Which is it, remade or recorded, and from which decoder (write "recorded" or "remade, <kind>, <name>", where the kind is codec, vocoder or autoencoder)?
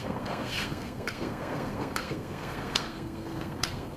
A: remade, codec, SNAC